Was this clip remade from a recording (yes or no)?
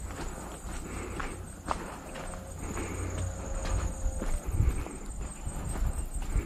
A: no